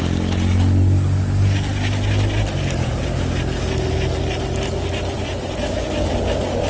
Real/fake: real